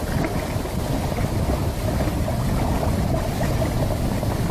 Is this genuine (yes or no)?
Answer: yes